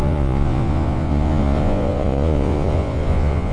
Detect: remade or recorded remade